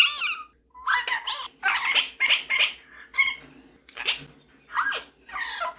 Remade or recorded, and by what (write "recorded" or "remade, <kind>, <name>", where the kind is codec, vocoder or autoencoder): recorded